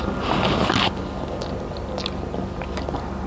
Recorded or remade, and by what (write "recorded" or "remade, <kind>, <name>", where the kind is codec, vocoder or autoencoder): recorded